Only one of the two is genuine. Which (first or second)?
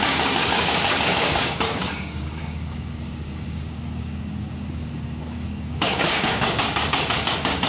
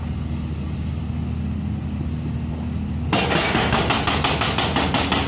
second